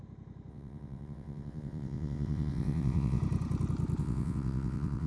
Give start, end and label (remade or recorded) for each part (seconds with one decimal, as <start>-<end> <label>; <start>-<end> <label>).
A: 0.0-0.5 recorded; 0.5-3.2 remade; 3.2-4.0 recorded; 4.0-5.1 remade

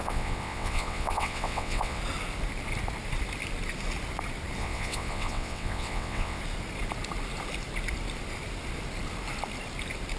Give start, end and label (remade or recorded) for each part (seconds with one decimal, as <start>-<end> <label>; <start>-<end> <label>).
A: 0.0-2.0 remade; 2.0-4.6 recorded; 4.6-6.4 remade; 6.4-10.2 recorded

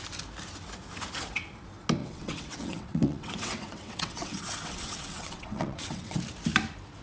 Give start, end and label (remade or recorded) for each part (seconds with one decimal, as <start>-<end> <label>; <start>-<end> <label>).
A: 0.0-2.0 recorded; 2.0-6.2 remade; 6.2-7.0 recorded

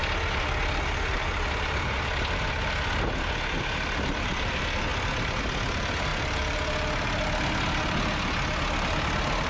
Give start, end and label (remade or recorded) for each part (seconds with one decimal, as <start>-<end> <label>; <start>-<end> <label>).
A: 0.0-9.5 recorded

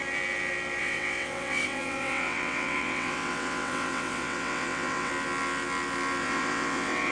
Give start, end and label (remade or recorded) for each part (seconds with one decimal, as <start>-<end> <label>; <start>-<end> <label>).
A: 0.0-0.8 recorded; 0.8-5.1 remade; 5.1-6.2 recorded; 6.2-7.1 remade

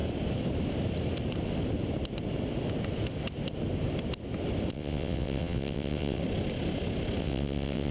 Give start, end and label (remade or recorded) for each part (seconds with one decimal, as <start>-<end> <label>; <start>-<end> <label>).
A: 0.0-4.7 recorded; 4.7-6.2 remade; 6.2-7.2 recorded; 7.2-7.9 remade

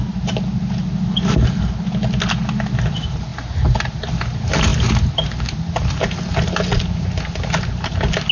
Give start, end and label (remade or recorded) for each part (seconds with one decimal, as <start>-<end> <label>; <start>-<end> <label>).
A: 0.0-8.3 recorded